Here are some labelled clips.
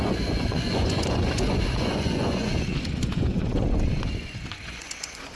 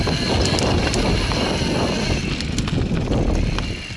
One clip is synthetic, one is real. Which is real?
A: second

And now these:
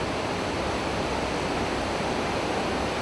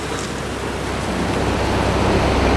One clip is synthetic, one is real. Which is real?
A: second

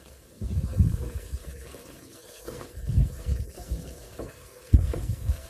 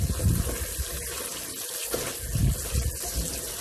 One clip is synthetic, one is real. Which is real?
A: second